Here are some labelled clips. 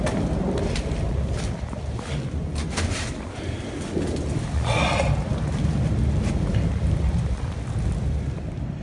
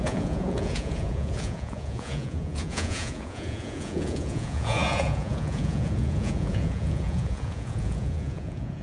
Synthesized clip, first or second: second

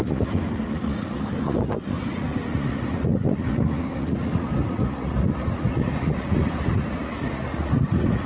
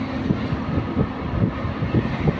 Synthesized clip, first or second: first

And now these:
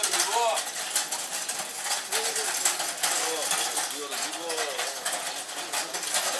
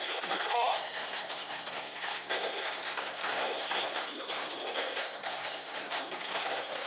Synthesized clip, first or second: second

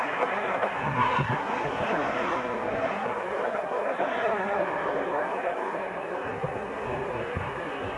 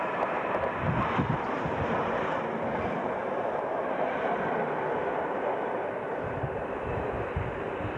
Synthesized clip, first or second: first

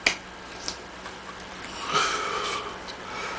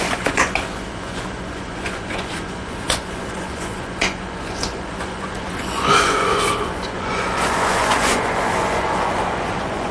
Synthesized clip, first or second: second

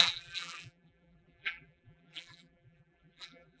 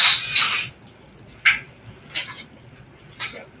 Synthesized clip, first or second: first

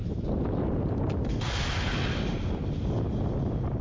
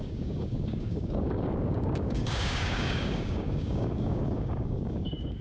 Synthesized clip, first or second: second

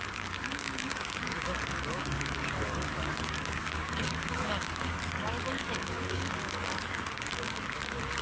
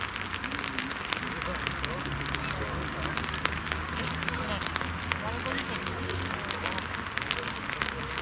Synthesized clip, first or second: first